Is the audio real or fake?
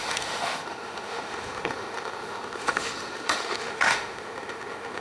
fake